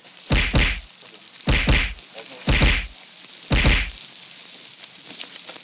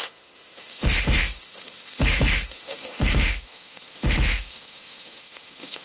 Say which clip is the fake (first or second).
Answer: second